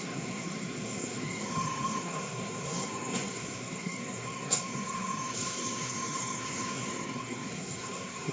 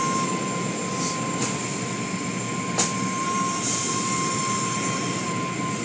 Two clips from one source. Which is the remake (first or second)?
first